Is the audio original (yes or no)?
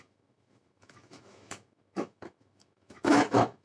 no